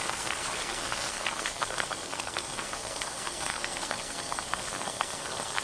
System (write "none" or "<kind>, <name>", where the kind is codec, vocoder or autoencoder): codec, SNAC